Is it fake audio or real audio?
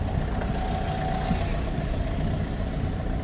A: real